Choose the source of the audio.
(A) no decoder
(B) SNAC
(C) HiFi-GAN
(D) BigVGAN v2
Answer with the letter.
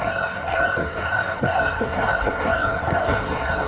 B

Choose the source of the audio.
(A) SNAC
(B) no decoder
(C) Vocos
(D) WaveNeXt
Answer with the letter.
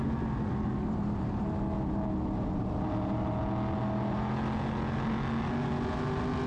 B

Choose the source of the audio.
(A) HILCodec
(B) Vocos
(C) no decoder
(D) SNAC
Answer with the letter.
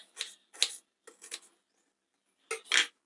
C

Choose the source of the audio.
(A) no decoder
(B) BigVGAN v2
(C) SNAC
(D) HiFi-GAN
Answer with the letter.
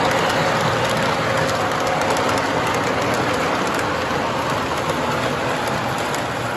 A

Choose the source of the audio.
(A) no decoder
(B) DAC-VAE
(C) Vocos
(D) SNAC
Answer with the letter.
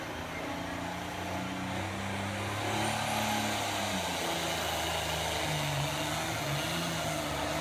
A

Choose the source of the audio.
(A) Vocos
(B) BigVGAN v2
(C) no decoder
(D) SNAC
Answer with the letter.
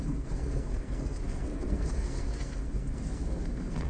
D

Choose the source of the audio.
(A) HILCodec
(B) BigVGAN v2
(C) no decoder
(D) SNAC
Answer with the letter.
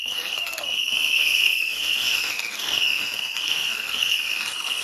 D